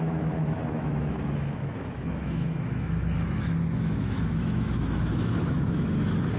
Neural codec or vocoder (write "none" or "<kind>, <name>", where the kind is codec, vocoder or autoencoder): autoencoder, DAC-VAE